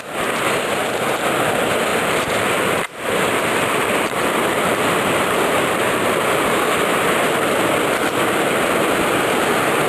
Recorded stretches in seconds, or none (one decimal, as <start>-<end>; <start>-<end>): 0.0-1.9; 3.4-3.8; 6.2-6.9; 7.6-9.9